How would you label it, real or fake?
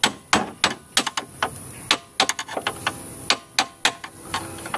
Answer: real